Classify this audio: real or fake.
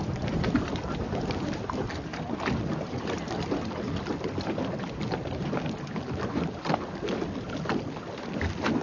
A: real